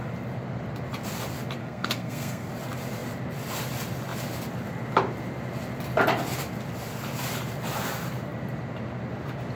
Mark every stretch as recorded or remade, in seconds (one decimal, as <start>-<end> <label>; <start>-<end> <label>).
0.0-1.6 recorded; 1.6-2.5 remade; 2.5-9.6 recorded